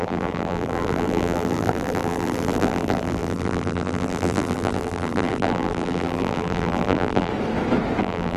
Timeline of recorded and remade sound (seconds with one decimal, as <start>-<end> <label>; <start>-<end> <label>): 0.0-7.3 remade; 7.3-8.0 recorded; 8.0-8.4 remade